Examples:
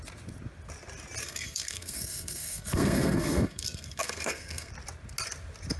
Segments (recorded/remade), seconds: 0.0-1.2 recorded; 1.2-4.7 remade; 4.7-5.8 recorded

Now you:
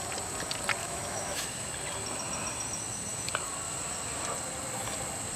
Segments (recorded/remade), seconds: 0.0-0.8 recorded; 0.8-1.7 remade; 1.7-5.4 recorded

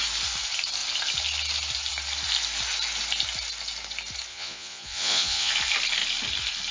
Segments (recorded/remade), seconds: 0.0-4.3 recorded; 4.3-5.5 remade; 5.5-6.7 recorded

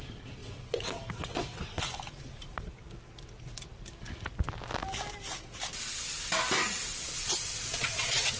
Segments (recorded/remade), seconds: 0.0-0.4 recorded; 0.4-1.8 remade; 1.8-7.7 recorded; 7.7-8.4 remade

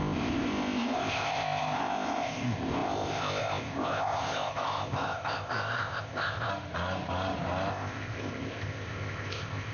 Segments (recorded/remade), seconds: 0.0-6.5 remade; 6.5-7.7 recorded; 7.7-9.7 remade

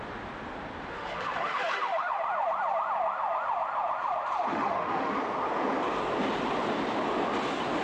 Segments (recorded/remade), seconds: 0.0-0.9 recorded; 0.9-2.1 remade; 2.1-4.5 recorded; 4.5-5.1 remade; 5.1-7.8 recorded

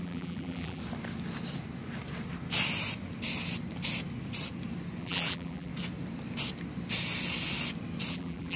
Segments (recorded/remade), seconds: 0.0-0.8 remade; 0.8-5.0 recorded; 5.0-5.7 remade; 5.7-8.1 recorded; 8.1-8.6 remade

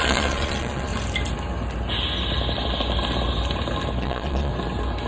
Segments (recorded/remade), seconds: 0.0-0.9 remade; 0.9-4.0 recorded; 4.0-4.5 remade; 4.5-5.1 recorded